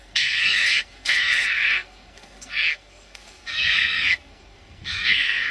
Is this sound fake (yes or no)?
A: yes